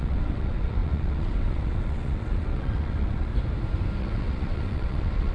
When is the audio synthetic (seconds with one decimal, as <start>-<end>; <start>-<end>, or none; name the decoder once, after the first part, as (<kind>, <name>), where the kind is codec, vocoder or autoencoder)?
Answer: 0.0-3.3 (vocoder, WaveNeXt); 4.0-5.3